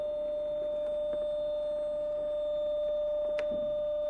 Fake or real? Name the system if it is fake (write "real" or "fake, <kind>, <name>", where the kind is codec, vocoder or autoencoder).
real